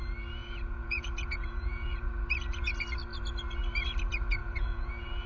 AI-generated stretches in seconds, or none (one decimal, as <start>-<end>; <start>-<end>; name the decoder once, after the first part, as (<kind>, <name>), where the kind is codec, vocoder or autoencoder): 0.4-2.1 (vocoder, Vocos); 4.4-5.3